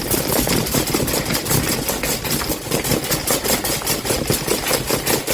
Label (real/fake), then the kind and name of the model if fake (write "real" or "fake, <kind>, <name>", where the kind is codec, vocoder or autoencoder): real